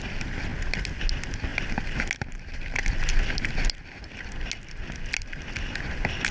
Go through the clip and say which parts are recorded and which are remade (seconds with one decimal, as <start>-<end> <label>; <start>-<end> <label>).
0.0-6.3 recorded